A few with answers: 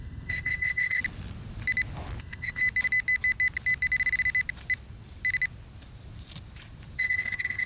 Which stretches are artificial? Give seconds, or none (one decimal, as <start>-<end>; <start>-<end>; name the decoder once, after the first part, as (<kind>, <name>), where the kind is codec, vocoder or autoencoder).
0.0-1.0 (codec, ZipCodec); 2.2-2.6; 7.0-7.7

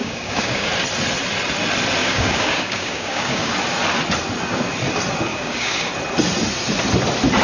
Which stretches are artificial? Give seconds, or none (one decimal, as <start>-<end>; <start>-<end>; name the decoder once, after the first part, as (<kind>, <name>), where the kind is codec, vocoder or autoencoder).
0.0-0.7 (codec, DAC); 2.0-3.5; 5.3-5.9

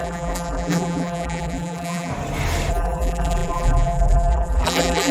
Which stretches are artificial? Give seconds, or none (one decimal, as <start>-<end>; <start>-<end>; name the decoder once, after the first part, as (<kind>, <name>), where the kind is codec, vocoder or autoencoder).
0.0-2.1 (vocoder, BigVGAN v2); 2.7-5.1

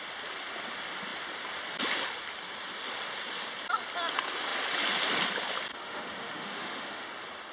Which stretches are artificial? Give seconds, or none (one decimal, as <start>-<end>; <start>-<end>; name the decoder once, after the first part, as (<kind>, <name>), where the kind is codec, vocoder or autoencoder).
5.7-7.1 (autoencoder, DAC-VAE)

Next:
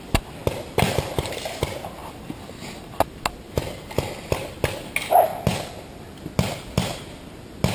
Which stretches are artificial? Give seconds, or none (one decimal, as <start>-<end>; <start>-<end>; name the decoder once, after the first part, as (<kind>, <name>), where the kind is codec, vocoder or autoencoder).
none

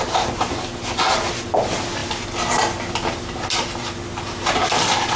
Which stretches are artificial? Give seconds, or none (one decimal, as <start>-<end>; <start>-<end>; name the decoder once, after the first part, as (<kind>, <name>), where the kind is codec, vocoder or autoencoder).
none